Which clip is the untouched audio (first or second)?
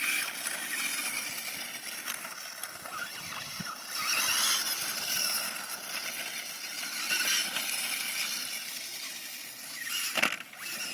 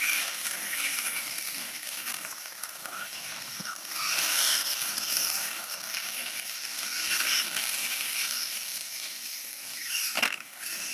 first